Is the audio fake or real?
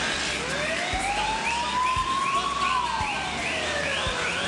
real